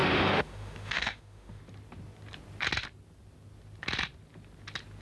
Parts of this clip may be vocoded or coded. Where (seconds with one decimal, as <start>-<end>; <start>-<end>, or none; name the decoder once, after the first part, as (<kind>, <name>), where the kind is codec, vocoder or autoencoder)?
0.0-1.6 (autoencoder, DAC-VAE)

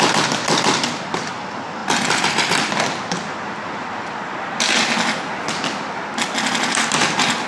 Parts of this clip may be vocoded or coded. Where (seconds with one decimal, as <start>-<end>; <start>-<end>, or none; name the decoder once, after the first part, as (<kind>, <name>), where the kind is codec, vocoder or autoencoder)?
none

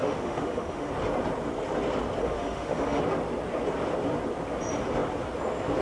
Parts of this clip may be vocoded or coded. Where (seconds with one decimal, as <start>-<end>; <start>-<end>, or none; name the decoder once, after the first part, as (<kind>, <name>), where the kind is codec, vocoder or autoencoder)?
0.0-0.9 (autoencoder, DAC-VAE); 2.2-3.0